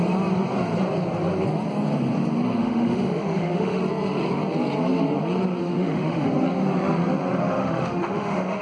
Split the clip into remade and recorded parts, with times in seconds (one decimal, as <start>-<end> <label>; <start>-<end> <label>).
0.0-2.6 recorded; 2.6-3.8 remade; 3.8-5.6 recorded; 5.6-6.3 remade; 6.3-7.4 recorded; 7.4-8.6 remade